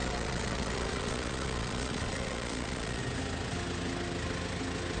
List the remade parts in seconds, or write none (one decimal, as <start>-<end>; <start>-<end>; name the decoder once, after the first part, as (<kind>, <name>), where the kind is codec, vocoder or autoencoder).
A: 0.0-3.0 (vocoder, Vocos)